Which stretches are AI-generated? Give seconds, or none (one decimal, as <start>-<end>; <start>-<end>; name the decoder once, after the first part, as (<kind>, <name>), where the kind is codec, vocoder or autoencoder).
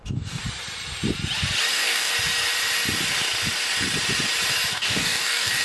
0.0-0.4 (codec, DAC); 1.7-2.1; 4.7-5.6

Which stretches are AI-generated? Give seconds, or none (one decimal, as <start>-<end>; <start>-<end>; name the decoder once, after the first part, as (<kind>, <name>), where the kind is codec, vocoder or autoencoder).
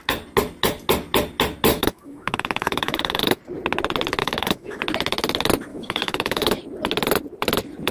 1.7-3.4 (autoencoder, DAC-VAE); 4.2-4.8; 5.7-6.6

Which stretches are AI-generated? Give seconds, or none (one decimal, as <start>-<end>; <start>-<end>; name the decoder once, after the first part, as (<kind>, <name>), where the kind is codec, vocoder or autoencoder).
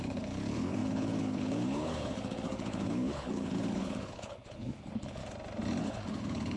0.0-5.2 (codec, HILCodec); 5.8-6.6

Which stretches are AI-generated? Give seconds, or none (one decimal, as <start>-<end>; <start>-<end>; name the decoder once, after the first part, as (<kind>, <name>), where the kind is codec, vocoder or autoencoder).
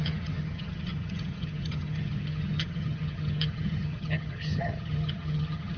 0.0-5.8 (vocoder, HiFi-GAN)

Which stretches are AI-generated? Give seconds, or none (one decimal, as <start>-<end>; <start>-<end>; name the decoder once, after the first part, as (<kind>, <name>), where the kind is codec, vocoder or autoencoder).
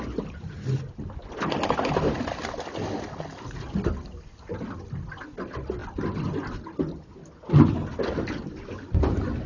none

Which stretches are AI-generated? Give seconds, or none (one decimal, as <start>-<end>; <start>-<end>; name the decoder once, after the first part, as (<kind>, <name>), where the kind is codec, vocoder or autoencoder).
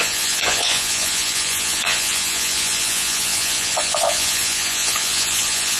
0.0-5.8 (vocoder, Vocos)